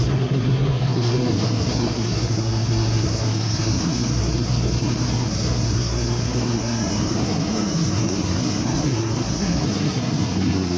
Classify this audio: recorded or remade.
remade